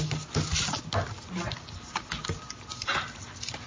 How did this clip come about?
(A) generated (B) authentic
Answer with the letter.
B